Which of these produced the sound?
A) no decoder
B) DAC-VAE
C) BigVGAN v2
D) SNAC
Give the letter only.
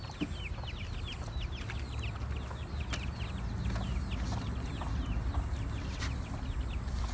A